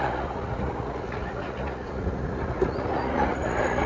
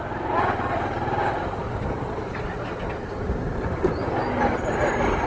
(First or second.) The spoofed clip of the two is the first